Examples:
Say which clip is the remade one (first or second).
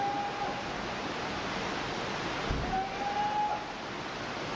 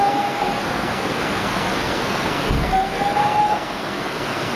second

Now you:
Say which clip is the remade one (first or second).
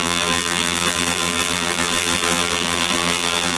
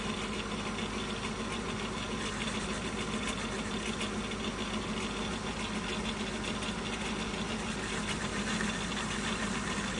first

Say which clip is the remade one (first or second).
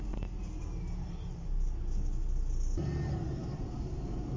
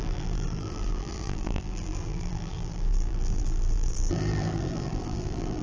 second